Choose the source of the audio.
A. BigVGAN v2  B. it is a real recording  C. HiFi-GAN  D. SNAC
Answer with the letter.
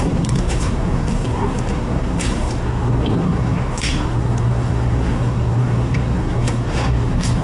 D